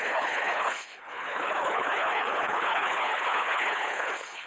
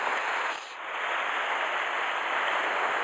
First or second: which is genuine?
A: second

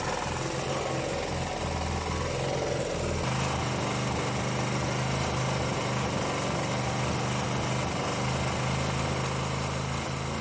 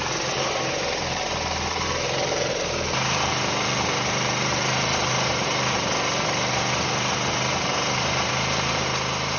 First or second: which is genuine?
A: first